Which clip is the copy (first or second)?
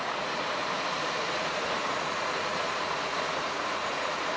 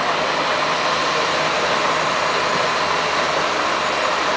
first